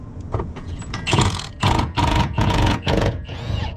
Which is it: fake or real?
fake